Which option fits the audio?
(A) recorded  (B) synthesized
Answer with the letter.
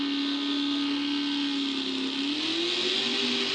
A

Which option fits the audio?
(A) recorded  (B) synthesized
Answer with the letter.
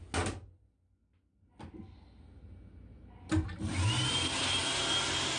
A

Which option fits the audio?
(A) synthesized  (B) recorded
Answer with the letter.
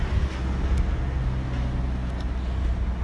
B